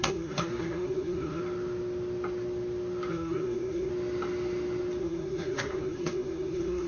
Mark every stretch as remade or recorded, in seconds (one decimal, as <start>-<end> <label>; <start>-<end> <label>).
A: 0.0-1.4 remade; 1.4-3.1 recorded; 3.1-3.9 remade; 3.9-5.0 recorded; 5.0-6.9 remade